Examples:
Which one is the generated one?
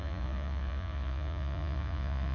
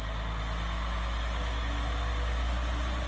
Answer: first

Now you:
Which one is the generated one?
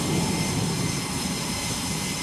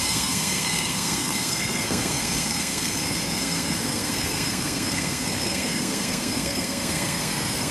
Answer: second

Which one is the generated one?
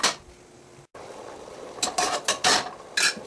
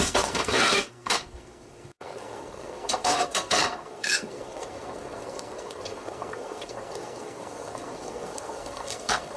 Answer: second